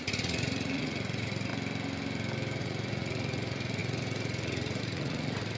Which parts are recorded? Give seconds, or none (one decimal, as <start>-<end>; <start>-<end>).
1.5-2.6

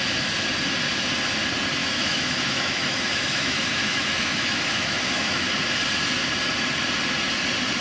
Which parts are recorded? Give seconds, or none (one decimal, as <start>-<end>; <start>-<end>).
0.0-1.8; 5.5-7.8

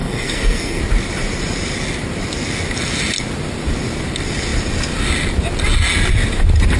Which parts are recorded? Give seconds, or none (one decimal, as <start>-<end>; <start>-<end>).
0.8-6.8

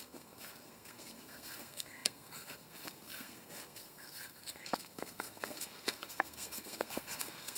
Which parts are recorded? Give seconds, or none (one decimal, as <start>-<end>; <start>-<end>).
none

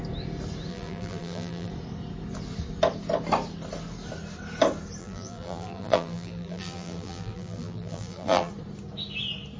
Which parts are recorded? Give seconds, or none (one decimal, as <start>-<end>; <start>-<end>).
0.0-0.7; 1.7-5.0; 8.5-9.6

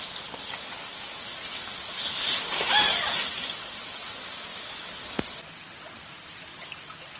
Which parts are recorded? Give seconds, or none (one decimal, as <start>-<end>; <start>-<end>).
0.0-4.5; 5.0-7.2

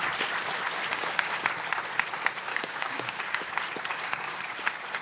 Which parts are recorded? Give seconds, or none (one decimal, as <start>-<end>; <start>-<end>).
0.0-0.9; 1.4-2.5; 3.5-3.9; 4.4-5.0

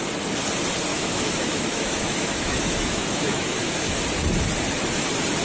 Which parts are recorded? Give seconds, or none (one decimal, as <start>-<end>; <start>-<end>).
0.0-0.9; 4.0-5.4